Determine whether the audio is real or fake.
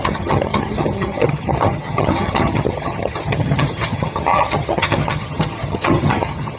fake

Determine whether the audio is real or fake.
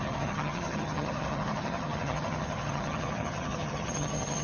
fake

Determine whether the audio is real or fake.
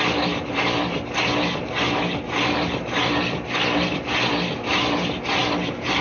real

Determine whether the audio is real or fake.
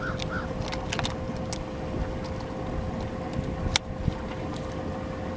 real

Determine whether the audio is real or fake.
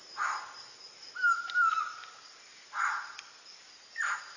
real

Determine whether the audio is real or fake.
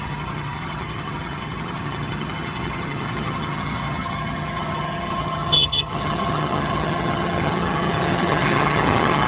fake